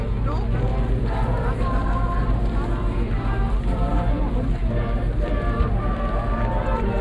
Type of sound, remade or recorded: recorded